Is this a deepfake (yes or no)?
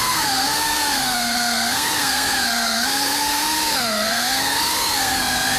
yes